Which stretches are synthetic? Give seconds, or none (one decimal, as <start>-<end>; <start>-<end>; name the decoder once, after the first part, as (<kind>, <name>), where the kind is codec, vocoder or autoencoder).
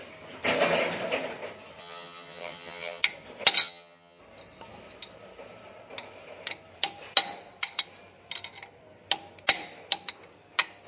1.8-3.0 (vocoder, HiFi-GAN); 3.6-4.2